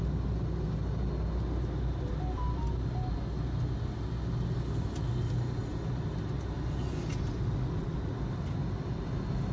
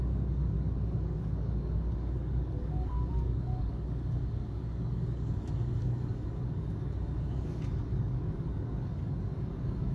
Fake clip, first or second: second